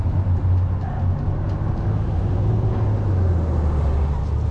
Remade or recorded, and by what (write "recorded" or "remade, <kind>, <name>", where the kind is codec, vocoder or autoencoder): recorded